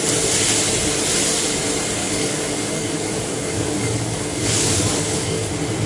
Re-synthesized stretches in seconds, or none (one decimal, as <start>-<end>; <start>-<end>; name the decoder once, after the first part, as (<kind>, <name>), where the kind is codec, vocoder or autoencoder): 2.0-5.5 (codec, DAC)